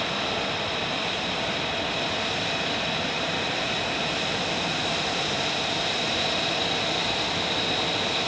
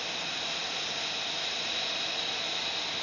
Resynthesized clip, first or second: first